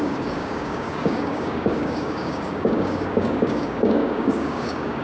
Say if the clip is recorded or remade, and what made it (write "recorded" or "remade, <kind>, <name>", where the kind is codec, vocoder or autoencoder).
remade, codec, DAC